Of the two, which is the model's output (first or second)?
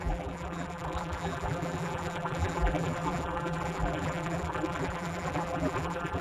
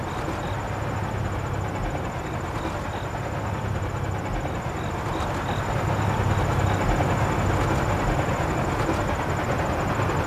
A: first